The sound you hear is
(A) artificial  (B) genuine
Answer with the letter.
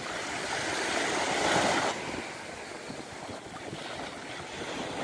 B